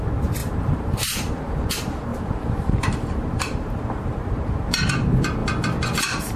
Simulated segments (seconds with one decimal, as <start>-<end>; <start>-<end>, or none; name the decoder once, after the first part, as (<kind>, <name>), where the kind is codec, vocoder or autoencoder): 0.4-1.7 (vocoder, BigVGAN v2); 2.1-4.9